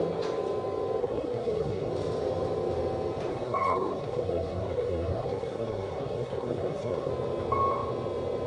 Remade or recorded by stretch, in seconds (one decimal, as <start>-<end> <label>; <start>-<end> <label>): 0.0-1.0 recorded; 1.0-1.9 remade; 1.9-3.3 recorded; 3.3-7.1 remade; 7.1-8.5 recorded